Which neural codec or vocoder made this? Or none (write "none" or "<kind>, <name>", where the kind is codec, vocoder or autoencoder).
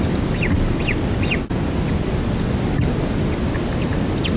none